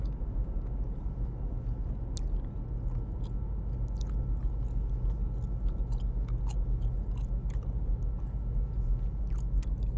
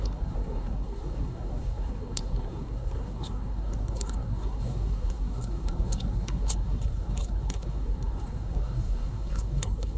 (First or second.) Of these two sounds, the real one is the first